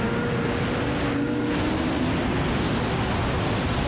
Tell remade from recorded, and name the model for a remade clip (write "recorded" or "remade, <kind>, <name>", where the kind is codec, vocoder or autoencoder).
recorded